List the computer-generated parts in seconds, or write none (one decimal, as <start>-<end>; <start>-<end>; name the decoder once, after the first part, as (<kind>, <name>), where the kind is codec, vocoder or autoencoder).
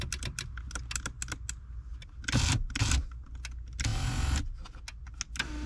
none